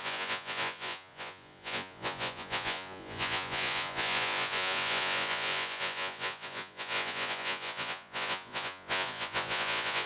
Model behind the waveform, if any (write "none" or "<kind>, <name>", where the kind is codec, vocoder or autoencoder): vocoder, Vocos